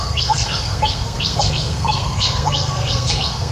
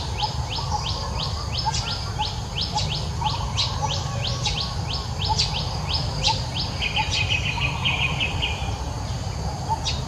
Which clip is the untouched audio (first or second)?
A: second